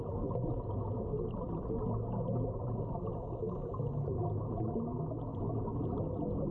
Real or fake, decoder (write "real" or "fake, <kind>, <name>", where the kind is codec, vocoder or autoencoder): real